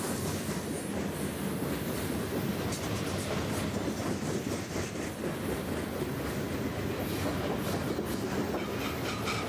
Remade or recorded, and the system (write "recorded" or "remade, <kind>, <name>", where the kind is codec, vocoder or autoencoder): recorded